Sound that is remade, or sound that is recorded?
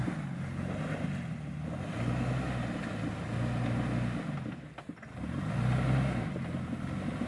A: recorded